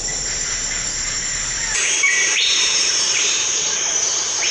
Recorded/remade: remade